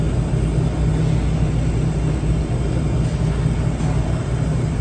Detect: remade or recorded recorded